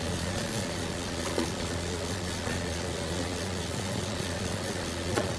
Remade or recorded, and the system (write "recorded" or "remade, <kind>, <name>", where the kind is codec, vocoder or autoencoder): remade, vocoder, Vocos